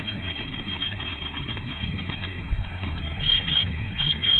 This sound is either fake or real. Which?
fake